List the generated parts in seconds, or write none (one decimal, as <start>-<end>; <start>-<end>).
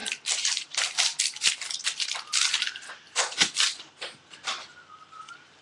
3.4-5.6